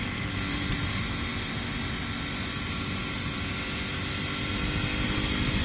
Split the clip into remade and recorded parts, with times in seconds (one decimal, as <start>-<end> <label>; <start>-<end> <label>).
0.0-5.6 recorded